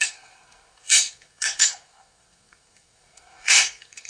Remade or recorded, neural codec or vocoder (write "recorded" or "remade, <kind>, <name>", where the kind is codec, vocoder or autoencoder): remade, codec, SNAC